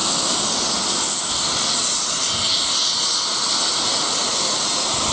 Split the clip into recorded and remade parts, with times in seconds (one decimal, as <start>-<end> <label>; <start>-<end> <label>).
0.0-1.3 recorded; 1.3-3.3 remade; 3.3-4.0 recorded; 4.0-5.1 remade